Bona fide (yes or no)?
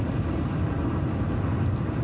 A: yes